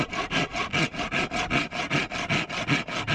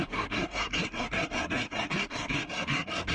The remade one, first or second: second